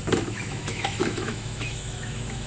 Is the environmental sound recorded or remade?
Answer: remade